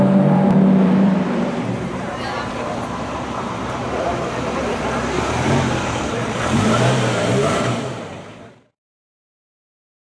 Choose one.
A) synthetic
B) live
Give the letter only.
A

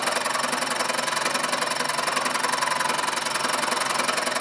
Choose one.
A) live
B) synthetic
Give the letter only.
A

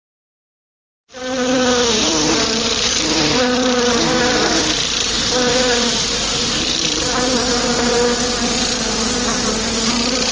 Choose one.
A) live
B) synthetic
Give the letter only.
B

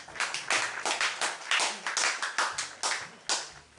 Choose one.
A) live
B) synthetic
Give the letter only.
A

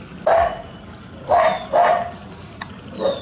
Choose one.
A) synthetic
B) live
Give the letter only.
B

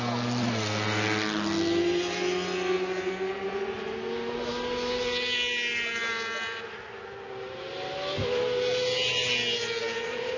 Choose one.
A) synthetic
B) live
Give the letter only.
B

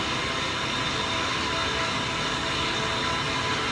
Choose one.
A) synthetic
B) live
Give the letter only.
B